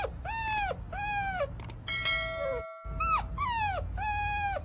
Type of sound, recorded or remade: recorded